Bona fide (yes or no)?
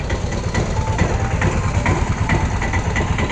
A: yes